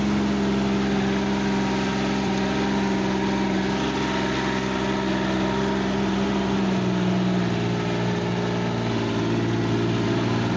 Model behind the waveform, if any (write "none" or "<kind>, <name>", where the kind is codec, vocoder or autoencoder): none